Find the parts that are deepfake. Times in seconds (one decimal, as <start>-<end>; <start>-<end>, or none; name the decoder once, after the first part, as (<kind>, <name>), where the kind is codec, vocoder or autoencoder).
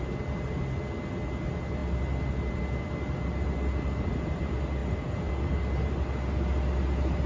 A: none